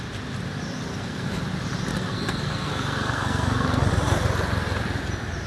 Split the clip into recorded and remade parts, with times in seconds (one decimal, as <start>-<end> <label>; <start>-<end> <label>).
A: 0.0-0.9 recorded; 0.9-1.4 remade; 1.4-1.9 recorded; 1.9-3.9 remade; 3.9-5.5 recorded